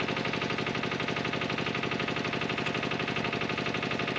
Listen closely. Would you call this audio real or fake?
real